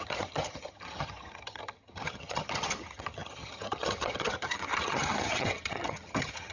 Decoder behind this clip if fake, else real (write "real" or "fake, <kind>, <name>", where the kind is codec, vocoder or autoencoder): fake, vocoder, HiFi-GAN